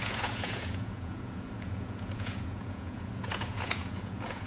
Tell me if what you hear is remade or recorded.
remade